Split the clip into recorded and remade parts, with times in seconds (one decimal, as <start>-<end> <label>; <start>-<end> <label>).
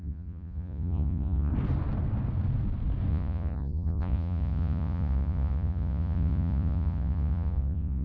0.0-1.5 remade; 1.5-3.1 recorded; 3.1-8.0 remade